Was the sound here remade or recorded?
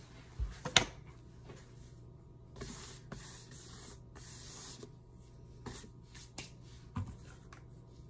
recorded